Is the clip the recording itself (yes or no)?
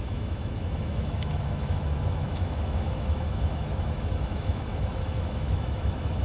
no